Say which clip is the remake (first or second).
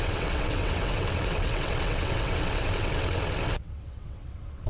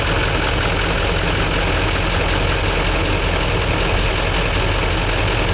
first